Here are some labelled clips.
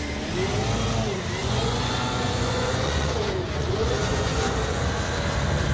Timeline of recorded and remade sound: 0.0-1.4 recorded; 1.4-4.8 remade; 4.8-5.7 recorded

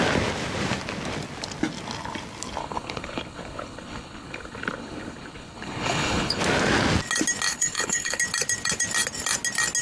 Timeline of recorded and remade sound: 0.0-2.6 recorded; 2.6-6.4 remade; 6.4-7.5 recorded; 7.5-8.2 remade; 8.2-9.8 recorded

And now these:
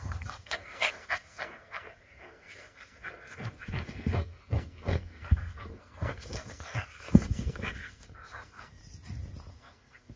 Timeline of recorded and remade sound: 0.0-8.8 remade; 8.8-9.5 recorded; 9.5-10.2 remade

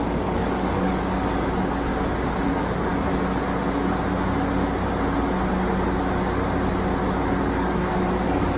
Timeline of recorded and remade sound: 0.0-1.9 remade; 1.9-2.5 recorded; 2.5-2.9 remade; 2.9-7.4 recorded; 7.4-8.6 remade